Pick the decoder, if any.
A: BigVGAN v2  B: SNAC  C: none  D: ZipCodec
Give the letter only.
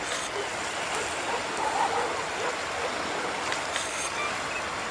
C